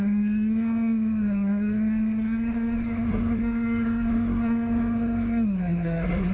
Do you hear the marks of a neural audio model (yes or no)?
yes